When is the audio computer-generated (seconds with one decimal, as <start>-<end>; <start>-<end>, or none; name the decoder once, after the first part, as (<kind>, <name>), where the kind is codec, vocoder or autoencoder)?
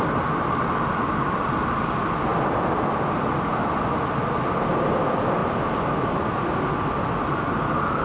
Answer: none